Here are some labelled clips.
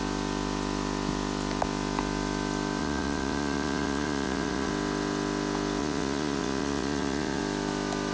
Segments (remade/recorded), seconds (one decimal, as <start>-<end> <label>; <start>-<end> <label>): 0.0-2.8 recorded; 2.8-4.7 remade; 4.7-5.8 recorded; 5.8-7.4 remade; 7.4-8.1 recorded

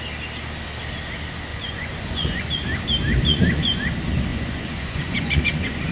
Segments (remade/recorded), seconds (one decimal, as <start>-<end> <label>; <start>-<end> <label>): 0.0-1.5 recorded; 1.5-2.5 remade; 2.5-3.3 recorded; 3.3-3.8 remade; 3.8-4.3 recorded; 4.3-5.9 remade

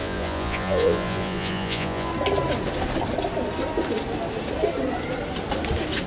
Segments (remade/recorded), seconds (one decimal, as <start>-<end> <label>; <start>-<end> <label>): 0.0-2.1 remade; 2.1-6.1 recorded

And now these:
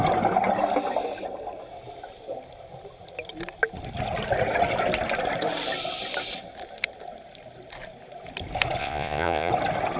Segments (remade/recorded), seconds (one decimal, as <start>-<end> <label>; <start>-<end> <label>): 0.0-8.8 recorded; 8.8-9.5 remade; 9.5-10.0 recorded

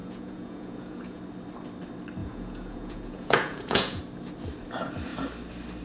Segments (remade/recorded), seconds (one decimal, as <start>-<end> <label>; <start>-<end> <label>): 0.0-1.2 remade; 1.2-2.2 recorded; 2.2-4.0 remade; 4.0-5.8 recorded